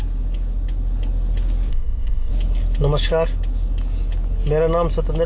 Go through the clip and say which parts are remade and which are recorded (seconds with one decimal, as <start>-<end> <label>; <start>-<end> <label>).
0.0-1.7 recorded; 1.7-2.3 remade; 2.3-5.3 recorded